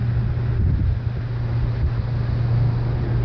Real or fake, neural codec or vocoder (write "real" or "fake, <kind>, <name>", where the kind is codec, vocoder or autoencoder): real